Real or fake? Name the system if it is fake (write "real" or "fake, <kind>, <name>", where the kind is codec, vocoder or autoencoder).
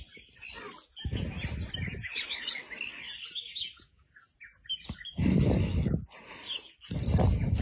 real